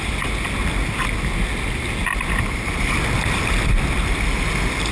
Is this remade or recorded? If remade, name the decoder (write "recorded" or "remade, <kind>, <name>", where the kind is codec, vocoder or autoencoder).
recorded